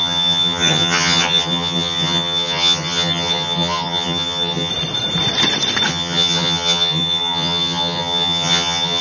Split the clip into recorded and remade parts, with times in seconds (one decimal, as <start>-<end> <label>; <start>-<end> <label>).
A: 0.0-4.7 remade; 4.7-5.9 recorded; 5.9-9.0 remade